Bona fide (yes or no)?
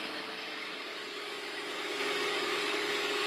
no